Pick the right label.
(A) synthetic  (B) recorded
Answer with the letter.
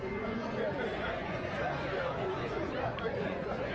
A